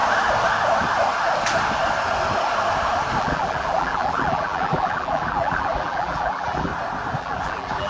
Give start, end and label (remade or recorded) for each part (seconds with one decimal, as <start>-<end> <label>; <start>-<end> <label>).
0.0-3.2 recorded; 3.2-6.7 remade; 6.7-7.2 recorded; 7.2-7.9 remade